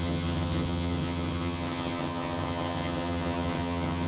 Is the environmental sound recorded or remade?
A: remade